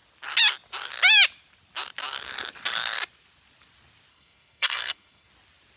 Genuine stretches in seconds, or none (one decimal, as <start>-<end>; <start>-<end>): 0.0-4.1; 5.3-5.8